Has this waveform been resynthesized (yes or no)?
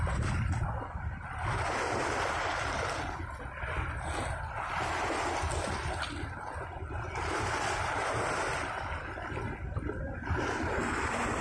no